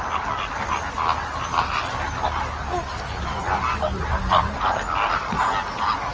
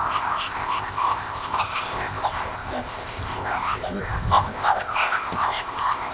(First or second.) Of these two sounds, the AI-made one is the second